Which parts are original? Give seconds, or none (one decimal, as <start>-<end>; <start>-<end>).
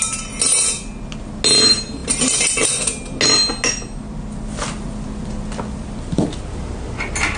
0.0-7.4